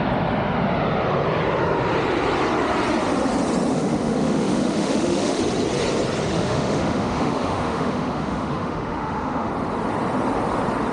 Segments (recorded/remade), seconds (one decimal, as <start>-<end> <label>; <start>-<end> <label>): 0.0-3.7 recorded; 3.7-5.4 remade; 5.4-6.3 recorded; 6.3-9.5 remade; 9.5-10.9 recorded